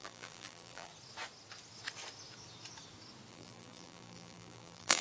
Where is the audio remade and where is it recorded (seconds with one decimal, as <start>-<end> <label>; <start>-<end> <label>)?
0.0-0.9 remade; 0.9-3.3 recorded; 3.3-5.0 remade